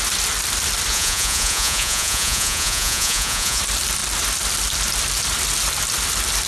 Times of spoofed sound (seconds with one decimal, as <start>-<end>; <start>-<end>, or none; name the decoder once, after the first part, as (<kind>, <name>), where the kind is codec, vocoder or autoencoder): 0.9-3.6 (vocoder, Vocos)